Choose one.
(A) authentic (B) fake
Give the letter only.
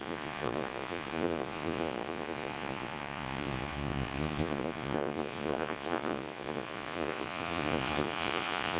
B